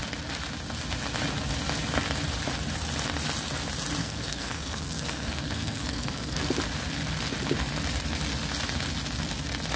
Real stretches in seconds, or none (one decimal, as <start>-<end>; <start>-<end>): 0.0-4.0; 6.6-9.8